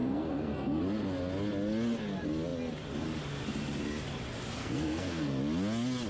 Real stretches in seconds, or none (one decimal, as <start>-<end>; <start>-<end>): 0.8-4.6; 5.4-6.1